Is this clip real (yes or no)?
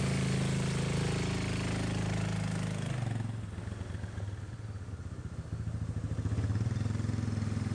yes